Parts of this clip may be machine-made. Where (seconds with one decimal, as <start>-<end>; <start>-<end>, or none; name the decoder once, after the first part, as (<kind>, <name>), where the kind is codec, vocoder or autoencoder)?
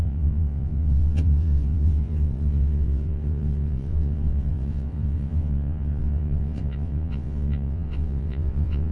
0.0-8.9 (vocoder, WaveNeXt)